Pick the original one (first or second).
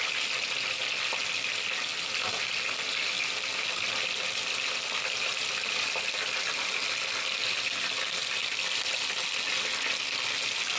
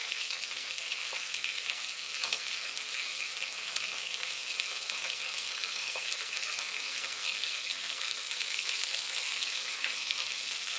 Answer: first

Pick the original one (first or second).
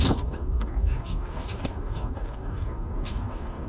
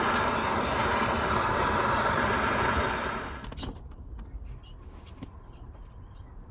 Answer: second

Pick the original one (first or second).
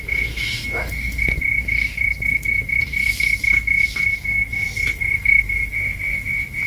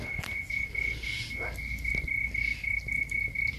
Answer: second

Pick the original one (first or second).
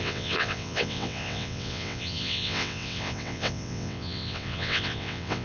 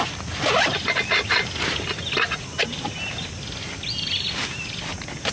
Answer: second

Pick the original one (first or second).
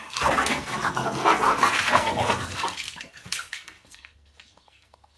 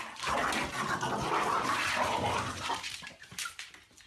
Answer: second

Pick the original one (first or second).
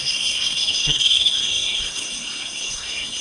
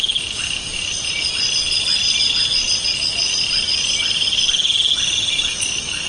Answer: second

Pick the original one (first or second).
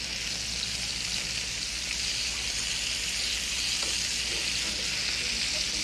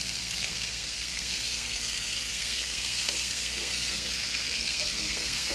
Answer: first